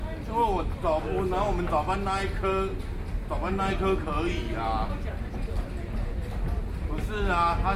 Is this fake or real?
real